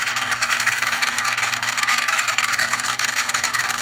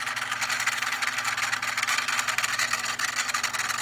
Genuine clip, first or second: second